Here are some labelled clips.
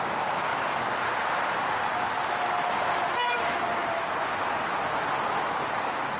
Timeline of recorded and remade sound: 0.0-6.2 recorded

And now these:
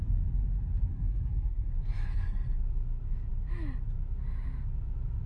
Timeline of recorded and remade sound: 0.0-0.9 recorded; 0.9-1.7 remade; 1.7-5.3 recorded

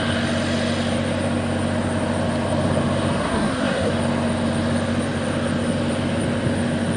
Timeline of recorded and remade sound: 0.0-3.2 recorded; 3.2-3.9 remade; 3.9-7.0 recorded

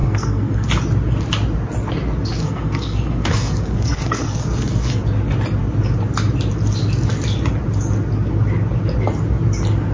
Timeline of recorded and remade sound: 0.0-0.7 remade; 0.7-2.4 recorded; 2.4-5.0 remade; 5.0-9.9 recorded

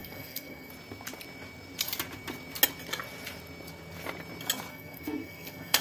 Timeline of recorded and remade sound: 0.0-0.7 remade; 0.7-4.7 recorded; 4.7-5.8 remade

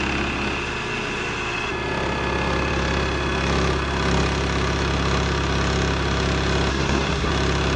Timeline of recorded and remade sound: 0.0-6.7 recorded; 6.7-7.3 remade; 7.3-7.8 recorded

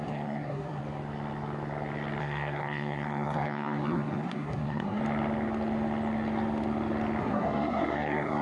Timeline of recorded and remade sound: 0.0-0.8 remade; 0.8-2.2 recorded; 2.2-5.0 remade; 5.0-7.2 recorded; 7.2-8.4 remade

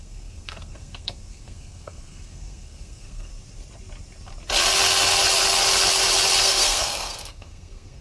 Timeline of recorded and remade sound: 0.0-3.3 remade; 3.3-6.4 recorded; 6.4-8.0 remade